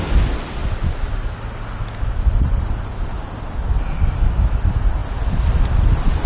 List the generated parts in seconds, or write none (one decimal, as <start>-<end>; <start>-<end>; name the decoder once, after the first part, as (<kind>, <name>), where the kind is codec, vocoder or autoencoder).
none